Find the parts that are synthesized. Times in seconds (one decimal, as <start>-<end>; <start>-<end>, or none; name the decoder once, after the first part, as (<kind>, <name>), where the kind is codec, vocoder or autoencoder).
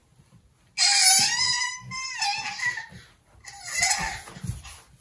none